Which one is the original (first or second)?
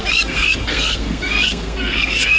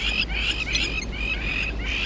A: second